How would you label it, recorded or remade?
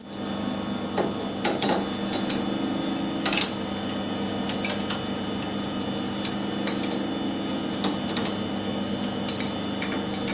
recorded